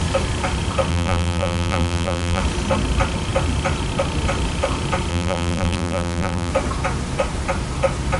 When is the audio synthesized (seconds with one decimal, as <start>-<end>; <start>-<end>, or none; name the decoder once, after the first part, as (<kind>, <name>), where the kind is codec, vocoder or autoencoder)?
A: 0.9-2.4 (vocoder, BigVGAN v2); 5.1-6.5